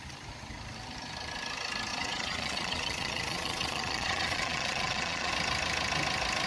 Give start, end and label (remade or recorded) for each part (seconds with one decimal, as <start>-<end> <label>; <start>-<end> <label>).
0.0-1.9 recorded; 1.9-5.3 remade; 5.3-6.5 recorded